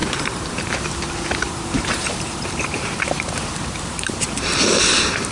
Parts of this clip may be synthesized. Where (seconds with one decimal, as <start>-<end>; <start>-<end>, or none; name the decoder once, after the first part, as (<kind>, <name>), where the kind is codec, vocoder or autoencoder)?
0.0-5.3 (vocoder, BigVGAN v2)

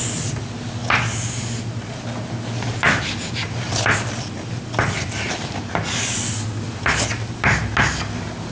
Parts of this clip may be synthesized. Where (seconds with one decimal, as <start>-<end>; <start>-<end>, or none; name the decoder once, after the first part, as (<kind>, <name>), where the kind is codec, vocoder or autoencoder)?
none

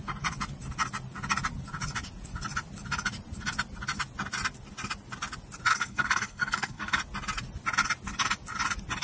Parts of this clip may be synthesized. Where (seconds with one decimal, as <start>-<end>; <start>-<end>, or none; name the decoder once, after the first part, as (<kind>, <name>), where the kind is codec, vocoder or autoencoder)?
5.7-7.0 (codec, SNAC)

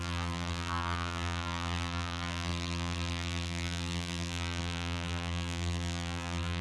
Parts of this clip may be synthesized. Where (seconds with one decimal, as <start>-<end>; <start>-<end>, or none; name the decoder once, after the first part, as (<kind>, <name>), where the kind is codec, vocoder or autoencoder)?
0.0-6.6 (vocoder, BigVGAN v2)

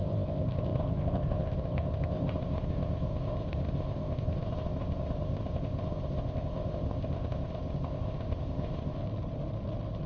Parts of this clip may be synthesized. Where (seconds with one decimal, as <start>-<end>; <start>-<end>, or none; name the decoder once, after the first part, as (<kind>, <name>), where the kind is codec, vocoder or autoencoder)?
0.0-9.0 (codec, ZipCodec)